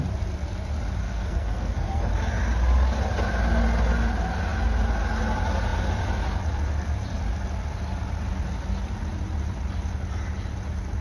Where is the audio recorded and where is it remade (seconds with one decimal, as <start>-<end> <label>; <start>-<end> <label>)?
0.0-1.0 recorded; 1.0-2.1 remade; 2.1-11.0 recorded